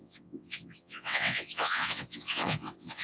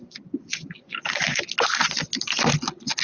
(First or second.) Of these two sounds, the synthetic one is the first